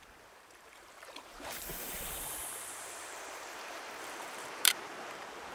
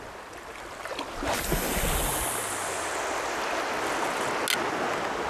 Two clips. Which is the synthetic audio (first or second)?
first